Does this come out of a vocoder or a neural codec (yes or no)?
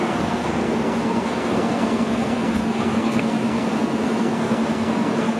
yes